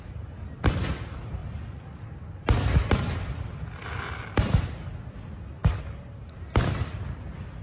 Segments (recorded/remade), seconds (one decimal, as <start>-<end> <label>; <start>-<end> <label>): 0.0-7.6 recorded